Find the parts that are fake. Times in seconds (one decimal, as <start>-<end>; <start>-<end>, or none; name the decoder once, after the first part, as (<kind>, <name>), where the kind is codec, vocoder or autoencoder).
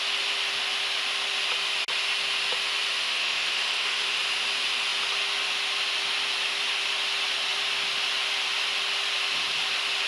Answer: 3.0-4.2 (autoencoder, DAC-VAE)